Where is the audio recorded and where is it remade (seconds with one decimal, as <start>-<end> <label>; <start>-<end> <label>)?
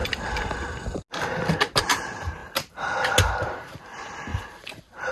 0.0-1.8 recorded; 1.8-2.4 remade; 2.4-3.2 recorded; 3.2-5.1 remade